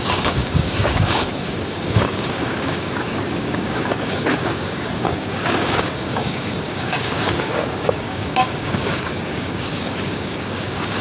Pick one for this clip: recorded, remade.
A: remade